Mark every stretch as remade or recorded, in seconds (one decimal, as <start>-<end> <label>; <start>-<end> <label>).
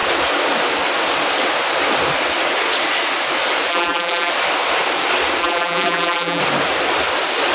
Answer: 0.0-3.7 recorded; 3.7-4.3 remade; 4.3-5.4 recorded; 5.4-6.4 remade; 6.4-7.5 recorded